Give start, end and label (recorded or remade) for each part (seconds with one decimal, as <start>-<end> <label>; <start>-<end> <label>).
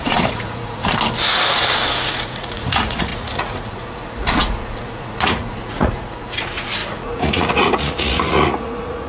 0.0-0.8 remade; 0.8-2.0 recorded; 2.0-9.1 remade